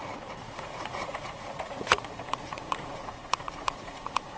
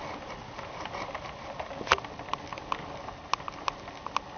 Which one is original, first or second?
second